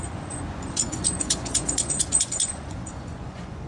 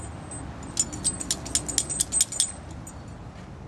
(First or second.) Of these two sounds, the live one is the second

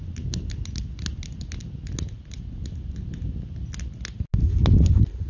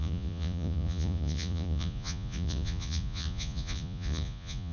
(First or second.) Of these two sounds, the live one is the first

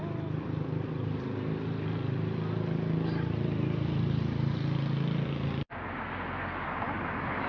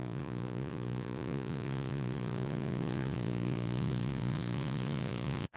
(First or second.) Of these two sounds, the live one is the first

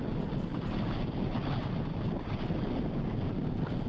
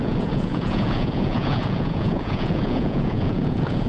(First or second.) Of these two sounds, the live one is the first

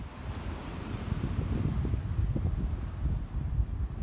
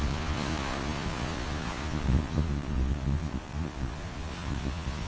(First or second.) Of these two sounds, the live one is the first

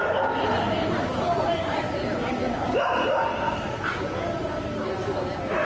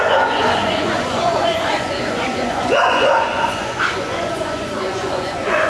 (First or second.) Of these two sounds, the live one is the first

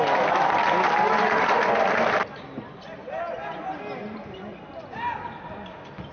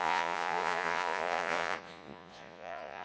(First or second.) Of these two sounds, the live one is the first